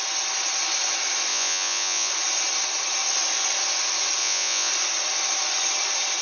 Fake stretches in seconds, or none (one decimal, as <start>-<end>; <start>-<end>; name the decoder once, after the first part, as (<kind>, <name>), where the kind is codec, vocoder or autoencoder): 1.3-2.1 (vocoder, Vocos); 4.2-4.7